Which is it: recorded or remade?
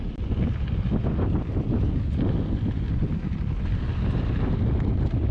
recorded